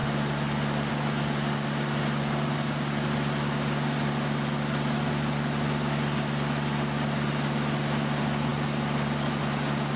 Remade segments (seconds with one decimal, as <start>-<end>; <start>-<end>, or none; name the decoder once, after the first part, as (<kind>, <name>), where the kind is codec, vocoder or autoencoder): none